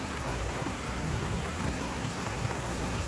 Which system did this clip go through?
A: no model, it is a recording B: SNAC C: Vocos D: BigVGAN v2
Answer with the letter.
B